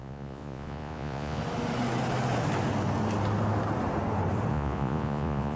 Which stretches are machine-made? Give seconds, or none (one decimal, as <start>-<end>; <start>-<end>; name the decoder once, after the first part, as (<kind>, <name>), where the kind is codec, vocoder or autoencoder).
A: 0.0-1.4 (vocoder, Vocos); 4.5-5.6